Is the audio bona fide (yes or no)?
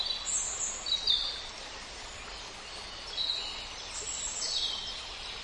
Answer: yes